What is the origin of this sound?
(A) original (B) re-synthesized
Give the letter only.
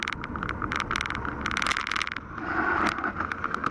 A